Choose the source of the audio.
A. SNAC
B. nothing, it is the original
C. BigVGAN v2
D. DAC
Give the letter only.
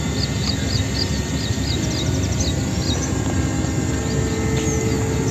B